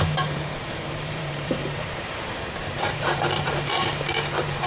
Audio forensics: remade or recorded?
remade